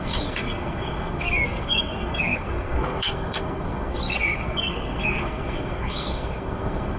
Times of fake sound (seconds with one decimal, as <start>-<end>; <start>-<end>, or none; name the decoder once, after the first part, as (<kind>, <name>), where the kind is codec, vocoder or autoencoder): 0.0-7.0 (codec, SNAC)